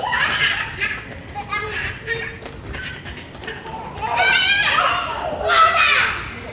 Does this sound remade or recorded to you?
recorded